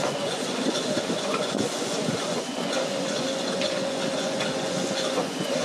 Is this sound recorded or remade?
remade